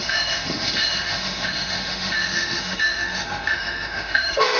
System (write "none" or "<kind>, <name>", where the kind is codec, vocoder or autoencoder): autoencoder, DAC-VAE